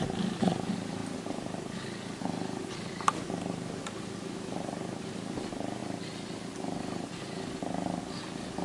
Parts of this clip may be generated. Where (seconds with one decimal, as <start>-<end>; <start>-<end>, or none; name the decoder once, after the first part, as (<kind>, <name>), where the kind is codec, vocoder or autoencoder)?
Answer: none